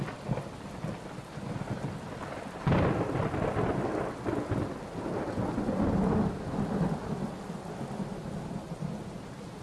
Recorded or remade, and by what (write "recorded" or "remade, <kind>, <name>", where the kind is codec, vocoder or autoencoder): recorded